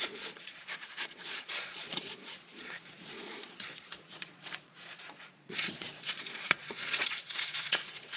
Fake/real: fake